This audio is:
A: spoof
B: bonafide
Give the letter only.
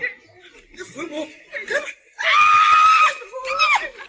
B